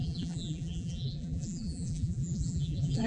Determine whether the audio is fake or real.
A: fake